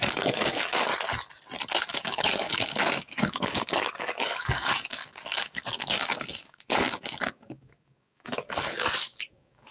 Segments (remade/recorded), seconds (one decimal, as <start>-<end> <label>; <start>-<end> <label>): 0.0-0.9 remade; 0.9-1.7 recorded; 1.7-9.7 remade